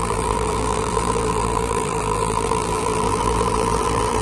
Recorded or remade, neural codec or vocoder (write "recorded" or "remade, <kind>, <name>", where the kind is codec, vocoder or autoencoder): remade, vocoder, BigVGAN v2